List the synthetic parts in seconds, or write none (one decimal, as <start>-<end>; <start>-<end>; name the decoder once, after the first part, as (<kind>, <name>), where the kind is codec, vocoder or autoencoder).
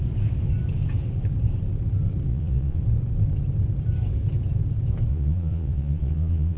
2.3-2.8 (vocoder, Vocos); 5.1-6.6